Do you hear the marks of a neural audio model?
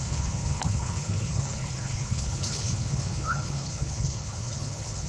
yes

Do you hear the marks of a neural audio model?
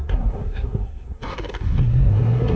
yes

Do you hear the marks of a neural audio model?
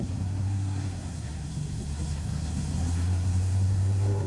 yes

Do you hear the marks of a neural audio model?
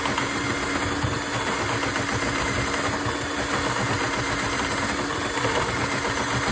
no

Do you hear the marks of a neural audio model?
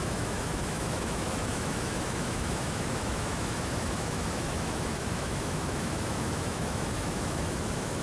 yes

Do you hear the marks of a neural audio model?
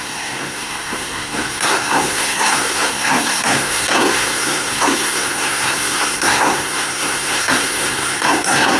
yes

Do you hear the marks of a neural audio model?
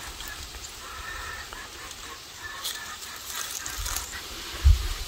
yes